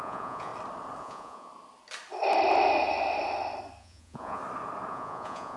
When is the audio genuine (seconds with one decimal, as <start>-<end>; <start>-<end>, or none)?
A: 0.5-1.0; 1.5-3.8; 4.4-4.9

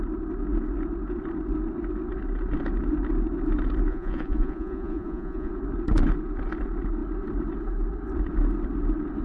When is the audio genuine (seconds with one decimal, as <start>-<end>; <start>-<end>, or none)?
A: 0.0-3.9; 5.5-9.2

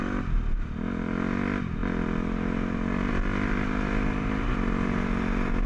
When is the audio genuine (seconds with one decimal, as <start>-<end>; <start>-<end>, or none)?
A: 0.0-5.7

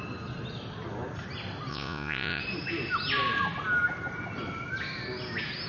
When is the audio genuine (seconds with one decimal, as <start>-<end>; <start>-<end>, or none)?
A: 0.0-1.7; 2.4-5.7

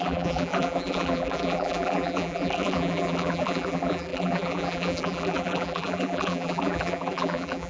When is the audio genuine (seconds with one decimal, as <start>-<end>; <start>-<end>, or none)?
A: none

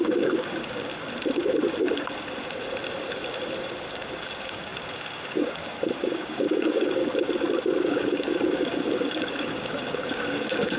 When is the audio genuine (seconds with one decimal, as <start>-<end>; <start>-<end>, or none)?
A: 0.9-3.9; 7.0-7.8